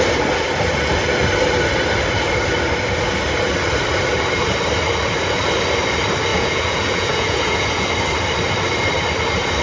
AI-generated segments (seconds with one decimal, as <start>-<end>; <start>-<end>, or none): 6.3-7.9